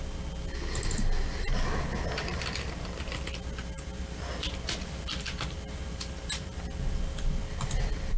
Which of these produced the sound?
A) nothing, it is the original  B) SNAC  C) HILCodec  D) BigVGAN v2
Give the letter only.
A